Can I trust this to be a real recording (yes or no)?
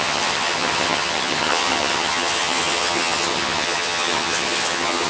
no